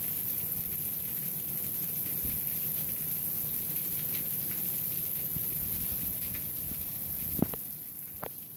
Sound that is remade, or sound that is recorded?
recorded